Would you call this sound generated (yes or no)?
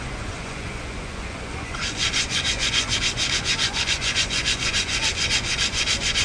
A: yes